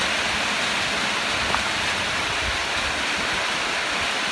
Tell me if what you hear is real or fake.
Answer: real